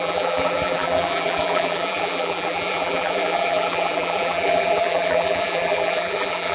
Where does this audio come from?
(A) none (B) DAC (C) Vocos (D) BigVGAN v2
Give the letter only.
D